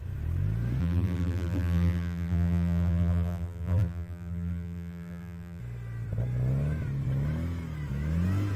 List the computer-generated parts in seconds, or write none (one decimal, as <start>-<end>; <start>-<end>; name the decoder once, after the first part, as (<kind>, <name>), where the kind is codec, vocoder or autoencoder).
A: 0.8-5.6 (vocoder, BigVGAN v2)